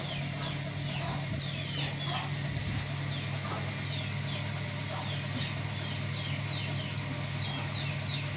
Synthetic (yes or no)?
no